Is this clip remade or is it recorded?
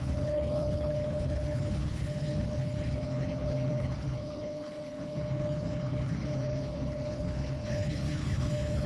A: remade